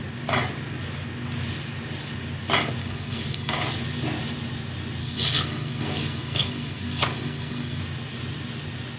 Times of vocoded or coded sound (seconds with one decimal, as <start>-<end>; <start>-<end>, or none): 2.8-3.5; 5.0-7.8